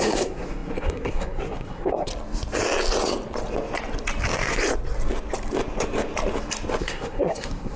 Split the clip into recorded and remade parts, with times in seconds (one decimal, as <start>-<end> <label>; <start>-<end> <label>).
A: 0.0-2.1 remade; 2.1-6.8 recorded; 6.8-7.8 remade